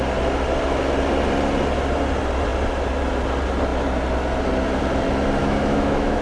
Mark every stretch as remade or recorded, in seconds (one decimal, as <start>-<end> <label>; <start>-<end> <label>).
0.0-5.4 recorded; 5.4-6.2 remade